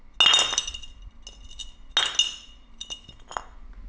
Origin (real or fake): real